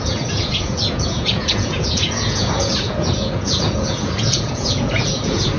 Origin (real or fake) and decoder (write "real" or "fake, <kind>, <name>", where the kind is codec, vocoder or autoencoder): fake, vocoder, Vocos